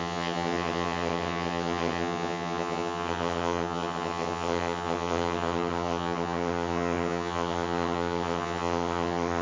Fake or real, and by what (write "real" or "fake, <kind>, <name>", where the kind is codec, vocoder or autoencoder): fake, vocoder, HiFi-GAN